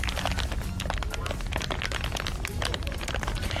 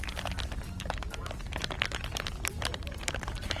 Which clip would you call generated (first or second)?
second